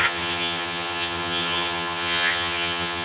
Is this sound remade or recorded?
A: remade